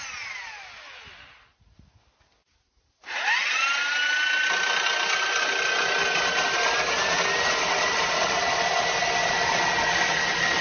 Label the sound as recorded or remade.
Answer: recorded